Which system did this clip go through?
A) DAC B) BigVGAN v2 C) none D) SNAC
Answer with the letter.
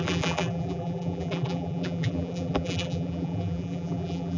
B